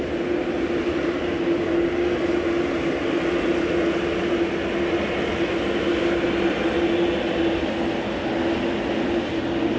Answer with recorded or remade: recorded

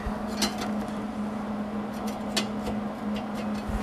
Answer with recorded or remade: recorded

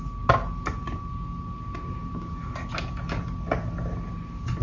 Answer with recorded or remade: recorded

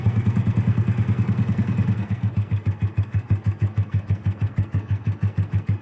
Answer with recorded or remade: remade